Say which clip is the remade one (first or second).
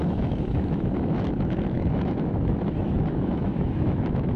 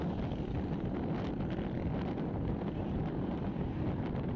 first